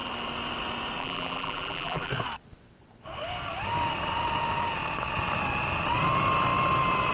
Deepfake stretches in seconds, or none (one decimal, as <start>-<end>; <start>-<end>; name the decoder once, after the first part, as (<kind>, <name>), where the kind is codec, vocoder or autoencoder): 1.0-2.1 (vocoder, BigVGAN v2)